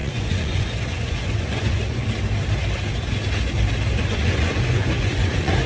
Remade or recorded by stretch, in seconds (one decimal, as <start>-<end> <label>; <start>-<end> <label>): 0.0-2.0 remade; 2.0-4.1 recorded; 4.1-5.7 remade